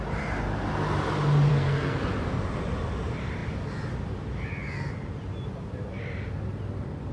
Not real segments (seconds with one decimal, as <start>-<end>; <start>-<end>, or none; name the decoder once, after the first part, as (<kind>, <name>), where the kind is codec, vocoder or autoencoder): 1.5-2.0 (codec, SNAC)